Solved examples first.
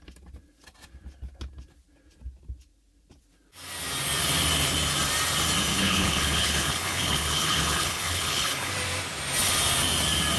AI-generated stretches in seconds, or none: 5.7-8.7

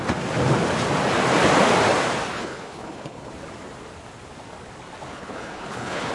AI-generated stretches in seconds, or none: 2.3-3.3; 5.1-6.1

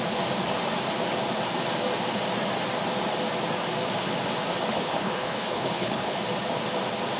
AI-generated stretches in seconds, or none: 4.7-6.2

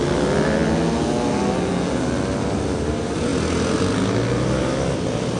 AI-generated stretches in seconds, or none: none

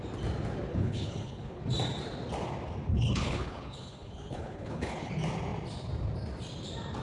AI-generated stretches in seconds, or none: 0.7-1.6; 2.9-5.1